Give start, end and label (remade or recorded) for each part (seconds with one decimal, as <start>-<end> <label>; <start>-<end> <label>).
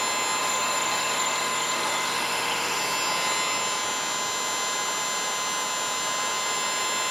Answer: 0.0-0.4 recorded; 0.4-2.8 remade; 2.8-7.1 recorded